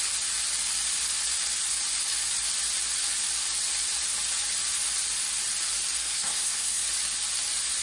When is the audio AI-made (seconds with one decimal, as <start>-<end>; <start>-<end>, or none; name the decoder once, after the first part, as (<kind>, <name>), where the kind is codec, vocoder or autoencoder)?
6.0-6.8 (codec, SNAC)